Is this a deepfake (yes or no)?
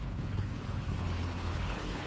yes